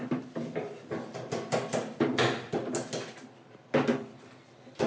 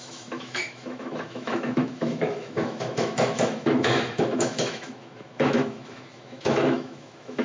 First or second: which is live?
first